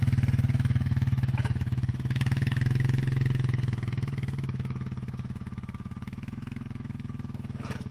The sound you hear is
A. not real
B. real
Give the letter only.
A